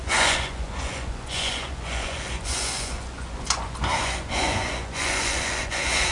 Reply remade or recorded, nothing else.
remade